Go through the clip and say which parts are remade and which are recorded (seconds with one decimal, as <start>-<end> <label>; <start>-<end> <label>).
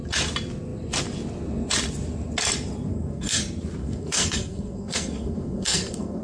0.0-2.9 recorded; 2.9-3.4 remade; 3.4-3.8 recorded; 3.8-6.2 remade